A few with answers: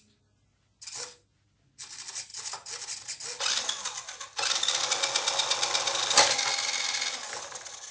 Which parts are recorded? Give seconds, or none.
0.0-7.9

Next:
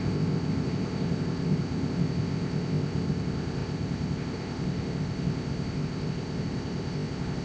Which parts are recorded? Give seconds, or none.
none

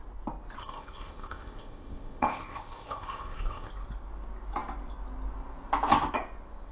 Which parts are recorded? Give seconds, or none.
0.0-0.6; 3.7-6.7

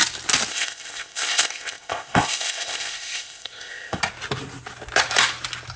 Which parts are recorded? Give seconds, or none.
0.0-0.5; 4.0-5.8